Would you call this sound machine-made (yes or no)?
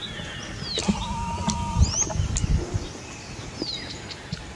no